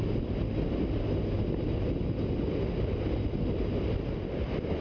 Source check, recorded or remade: recorded